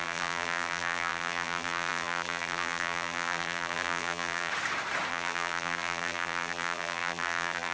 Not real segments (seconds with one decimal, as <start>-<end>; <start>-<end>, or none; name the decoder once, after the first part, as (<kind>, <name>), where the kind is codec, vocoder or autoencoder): 0.0-4.5 (vocoder, BigVGAN v2); 5.1-7.7